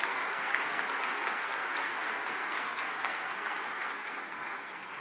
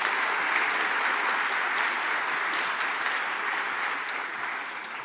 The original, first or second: second